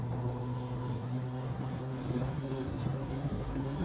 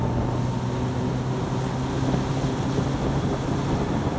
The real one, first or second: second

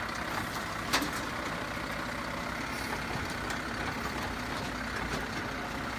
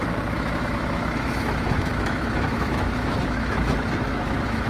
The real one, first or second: first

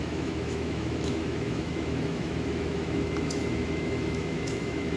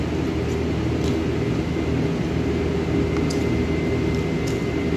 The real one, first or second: second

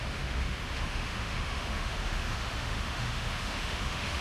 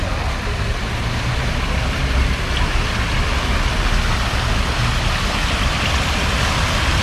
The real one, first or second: second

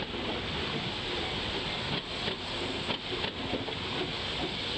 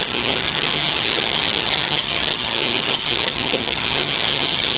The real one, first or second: first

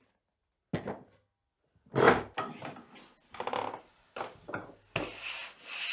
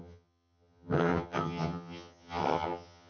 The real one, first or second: first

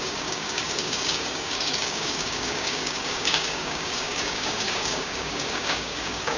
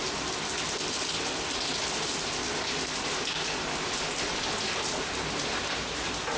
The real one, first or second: second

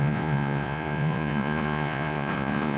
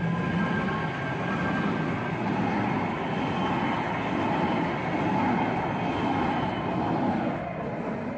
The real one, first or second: second